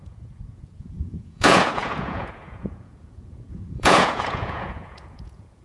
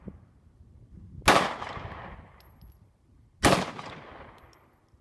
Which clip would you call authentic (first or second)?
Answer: second